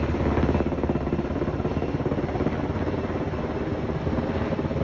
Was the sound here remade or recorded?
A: recorded